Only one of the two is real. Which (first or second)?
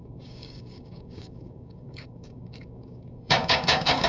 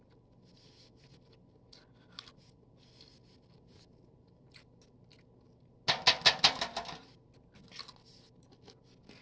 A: second